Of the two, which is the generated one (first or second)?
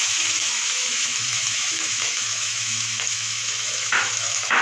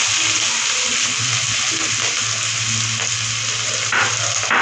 first